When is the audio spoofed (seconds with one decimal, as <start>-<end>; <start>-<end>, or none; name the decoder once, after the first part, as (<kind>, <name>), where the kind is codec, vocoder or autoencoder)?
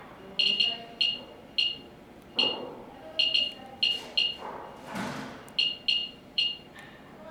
6.0-7.3 (vocoder, BigVGAN v2)